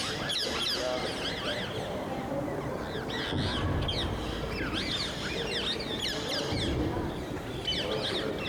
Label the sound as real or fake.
real